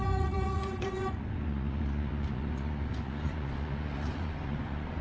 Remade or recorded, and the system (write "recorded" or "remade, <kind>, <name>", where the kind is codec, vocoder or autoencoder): remade, vocoder, Vocos